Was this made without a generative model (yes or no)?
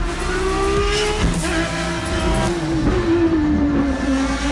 yes